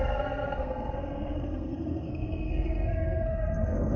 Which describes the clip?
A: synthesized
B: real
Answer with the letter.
A